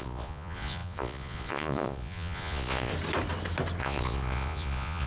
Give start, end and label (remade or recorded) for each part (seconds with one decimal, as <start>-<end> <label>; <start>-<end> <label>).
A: 0.0-2.9 remade; 2.9-3.8 recorded; 3.8-5.1 remade

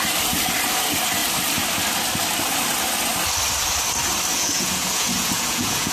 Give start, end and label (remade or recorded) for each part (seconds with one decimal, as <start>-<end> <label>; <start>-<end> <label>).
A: 0.0-4.3 recorded; 4.3-5.9 remade